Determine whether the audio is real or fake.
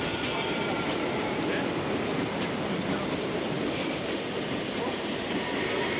real